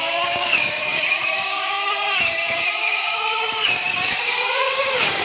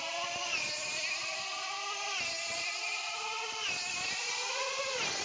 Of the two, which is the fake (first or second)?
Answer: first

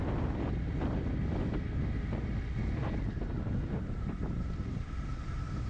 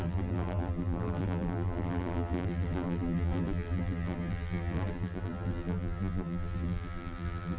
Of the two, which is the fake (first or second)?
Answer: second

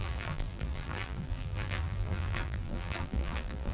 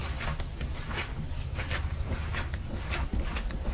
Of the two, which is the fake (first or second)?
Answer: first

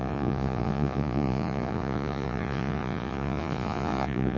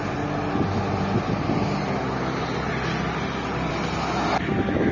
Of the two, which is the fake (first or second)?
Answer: first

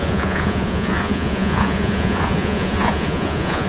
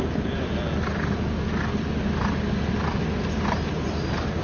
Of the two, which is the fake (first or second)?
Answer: first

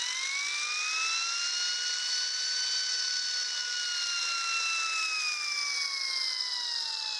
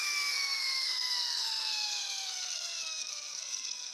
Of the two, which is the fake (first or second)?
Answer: second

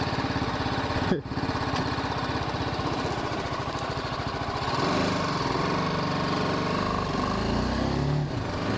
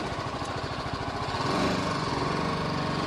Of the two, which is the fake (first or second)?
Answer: second